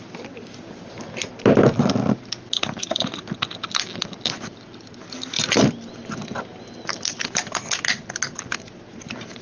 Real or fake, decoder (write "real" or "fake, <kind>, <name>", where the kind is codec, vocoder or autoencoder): real